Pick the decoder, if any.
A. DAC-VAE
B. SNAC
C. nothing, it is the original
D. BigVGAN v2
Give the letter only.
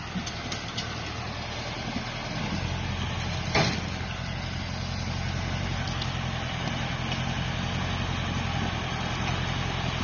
C